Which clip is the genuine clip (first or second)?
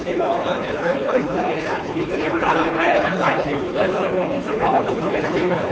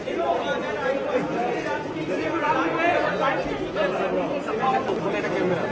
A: second